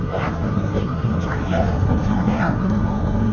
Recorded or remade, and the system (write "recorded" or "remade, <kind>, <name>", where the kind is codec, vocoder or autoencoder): remade, codec, SNAC